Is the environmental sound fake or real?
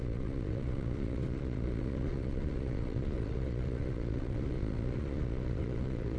fake